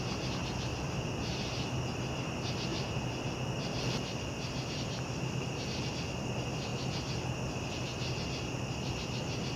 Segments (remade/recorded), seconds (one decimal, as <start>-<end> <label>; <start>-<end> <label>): 0.0-0.7 recorded; 0.7-1.2 remade; 1.2-2.7 recorded; 2.7-5.9 remade; 5.9-9.6 recorded